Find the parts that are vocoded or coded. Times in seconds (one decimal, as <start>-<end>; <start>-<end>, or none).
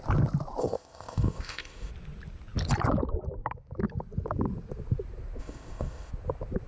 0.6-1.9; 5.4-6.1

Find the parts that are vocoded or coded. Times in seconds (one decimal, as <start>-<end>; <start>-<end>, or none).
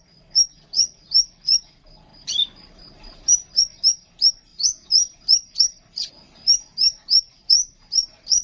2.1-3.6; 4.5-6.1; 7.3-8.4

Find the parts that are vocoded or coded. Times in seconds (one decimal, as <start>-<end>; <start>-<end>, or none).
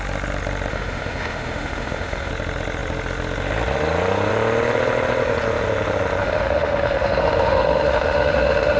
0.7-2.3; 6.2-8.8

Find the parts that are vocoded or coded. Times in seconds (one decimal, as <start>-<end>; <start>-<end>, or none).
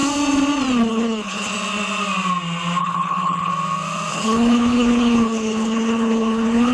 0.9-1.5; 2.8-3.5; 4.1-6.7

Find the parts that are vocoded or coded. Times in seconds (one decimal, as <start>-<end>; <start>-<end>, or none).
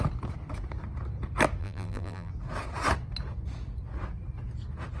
1.6-2.3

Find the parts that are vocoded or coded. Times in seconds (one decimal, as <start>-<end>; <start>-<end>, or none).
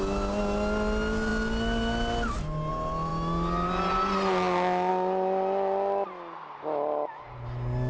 none